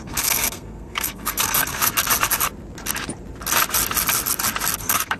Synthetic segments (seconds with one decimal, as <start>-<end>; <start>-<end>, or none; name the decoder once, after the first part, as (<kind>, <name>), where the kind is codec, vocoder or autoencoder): 0.0-1.9 (codec, SNAC); 4.8-5.2